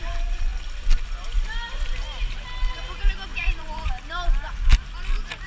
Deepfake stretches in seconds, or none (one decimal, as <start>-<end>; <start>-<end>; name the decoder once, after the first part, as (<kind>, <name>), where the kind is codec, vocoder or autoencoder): 3.3-3.9 (vocoder, Vocos)